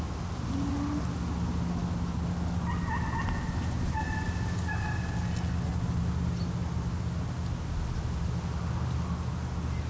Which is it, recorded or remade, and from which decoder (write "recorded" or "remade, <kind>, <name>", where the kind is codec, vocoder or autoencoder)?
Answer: recorded